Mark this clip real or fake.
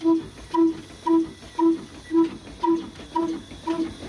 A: real